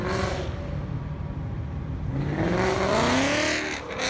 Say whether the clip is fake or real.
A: real